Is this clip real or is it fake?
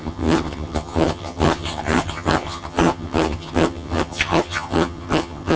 fake